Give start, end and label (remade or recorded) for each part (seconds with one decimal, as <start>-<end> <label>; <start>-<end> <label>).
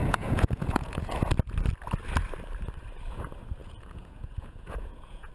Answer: 0.0-1.0 remade; 1.0-3.6 recorded; 3.6-5.3 remade